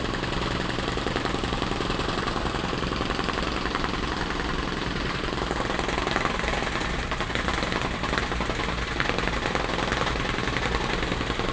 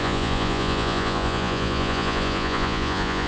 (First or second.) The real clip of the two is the first